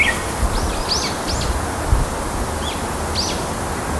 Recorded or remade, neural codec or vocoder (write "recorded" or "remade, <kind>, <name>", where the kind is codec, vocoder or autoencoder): recorded